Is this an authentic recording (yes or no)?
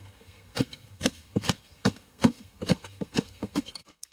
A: no